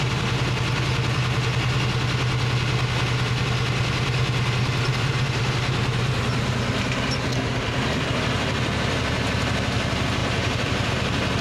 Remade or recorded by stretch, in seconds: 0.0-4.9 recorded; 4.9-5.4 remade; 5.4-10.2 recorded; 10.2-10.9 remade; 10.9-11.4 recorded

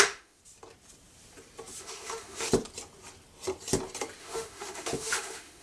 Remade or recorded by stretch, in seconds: 0.0-0.4 remade; 0.4-1.8 recorded; 1.8-2.5 remade; 2.5-4.2 recorded; 4.2-5.6 remade

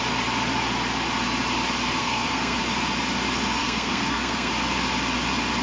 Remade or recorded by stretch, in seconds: 0.0-2.0 recorded; 2.0-2.6 remade; 2.6-3.6 recorded; 3.6-4.5 remade; 4.5-5.6 recorded

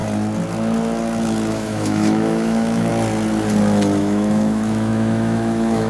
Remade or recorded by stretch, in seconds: 0.0-1.5 recorded; 1.5-2.9 remade; 2.9-4.0 recorded; 4.0-5.9 remade

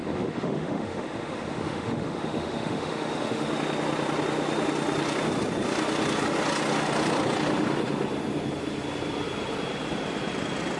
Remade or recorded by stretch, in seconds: 0.0-3.5 remade; 3.5-10.8 recorded